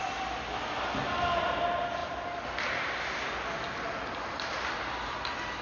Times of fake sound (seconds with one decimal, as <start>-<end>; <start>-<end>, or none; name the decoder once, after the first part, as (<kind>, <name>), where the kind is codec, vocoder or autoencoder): none